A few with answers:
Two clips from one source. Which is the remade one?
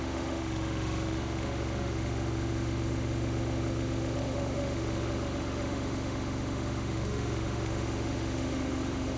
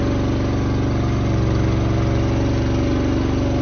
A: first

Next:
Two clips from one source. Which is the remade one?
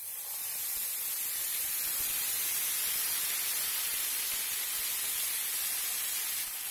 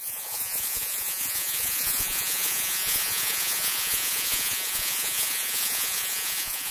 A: second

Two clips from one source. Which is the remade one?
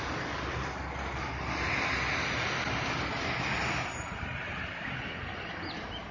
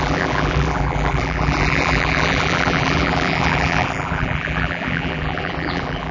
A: second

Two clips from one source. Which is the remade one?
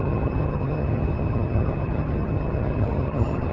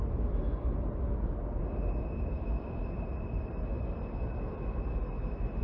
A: first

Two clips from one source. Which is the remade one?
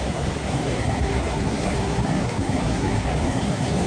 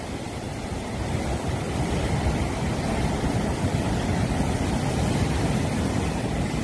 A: first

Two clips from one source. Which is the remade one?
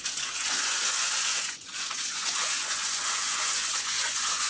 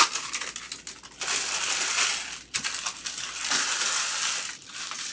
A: first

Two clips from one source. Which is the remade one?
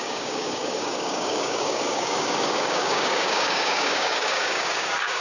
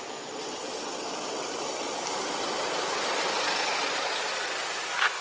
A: first